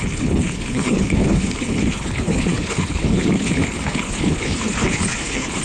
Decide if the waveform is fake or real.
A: fake